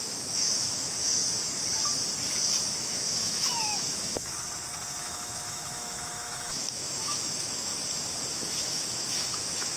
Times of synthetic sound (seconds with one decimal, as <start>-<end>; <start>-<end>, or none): 0.0-1.2; 2.8-4.3; 5.0-7.7; 8.3-9.8